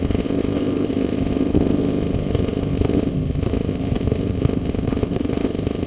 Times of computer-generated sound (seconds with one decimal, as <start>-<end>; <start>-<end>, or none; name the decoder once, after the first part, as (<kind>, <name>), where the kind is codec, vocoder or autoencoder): 0.0-5.9 (codec, ZipCodec)